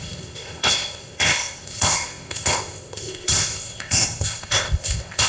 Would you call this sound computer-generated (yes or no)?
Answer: yes